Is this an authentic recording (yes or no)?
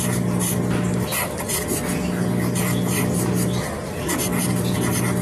yes